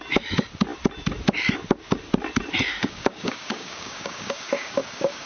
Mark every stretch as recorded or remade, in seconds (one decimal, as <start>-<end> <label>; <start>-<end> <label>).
0.0-2.7 recorded; 2.7-5.3 remade